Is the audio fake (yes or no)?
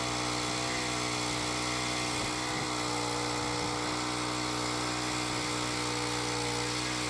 no